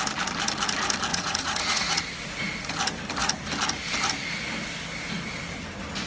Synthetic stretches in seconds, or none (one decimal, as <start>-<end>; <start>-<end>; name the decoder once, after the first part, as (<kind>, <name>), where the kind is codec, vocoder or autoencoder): 1.1-2.0 (vocoder, Vocos)